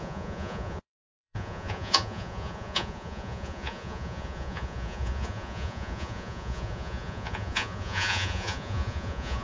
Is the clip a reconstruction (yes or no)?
yes